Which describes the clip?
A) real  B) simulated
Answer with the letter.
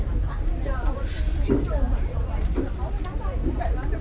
B